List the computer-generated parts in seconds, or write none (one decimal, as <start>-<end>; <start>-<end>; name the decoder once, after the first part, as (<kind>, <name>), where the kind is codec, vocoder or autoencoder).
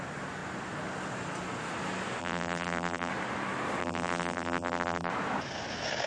2.2-3.1 (vocoder, BigVGAN v2); 3.8-5.1